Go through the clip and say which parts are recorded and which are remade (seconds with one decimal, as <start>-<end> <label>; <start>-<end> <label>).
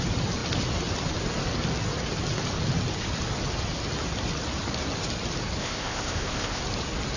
0.0-5.6 recorded; 5.6-6.6 remade; 6.6-7.2 recorded